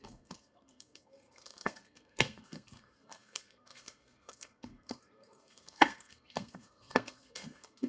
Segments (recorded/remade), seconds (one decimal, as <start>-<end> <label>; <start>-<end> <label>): 0.0-7.9 remade